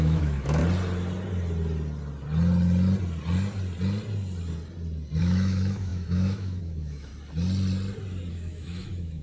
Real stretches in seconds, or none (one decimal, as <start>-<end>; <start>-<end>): 0.6-5.2; 7.1-8.3